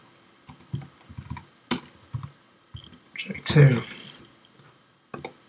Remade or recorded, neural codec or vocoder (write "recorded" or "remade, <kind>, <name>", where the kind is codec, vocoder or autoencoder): recorded